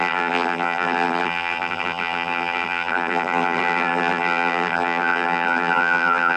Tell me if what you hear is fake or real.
fake